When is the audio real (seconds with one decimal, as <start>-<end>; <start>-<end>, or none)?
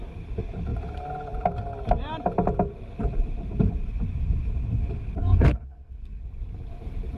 0.0-5.2; 6.2-7.2